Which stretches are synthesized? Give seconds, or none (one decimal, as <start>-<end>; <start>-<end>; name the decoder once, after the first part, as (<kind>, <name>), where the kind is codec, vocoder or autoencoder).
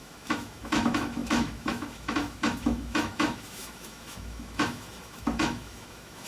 0.0-6.3 (autoencoder, DAC-VAE)